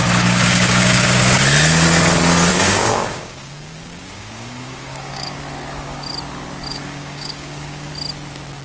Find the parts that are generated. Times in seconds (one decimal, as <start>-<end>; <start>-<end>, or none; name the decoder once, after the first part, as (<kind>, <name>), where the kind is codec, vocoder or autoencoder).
0.0-1.4 (codec, DAC); 2.5-5.4; 6.7-7.9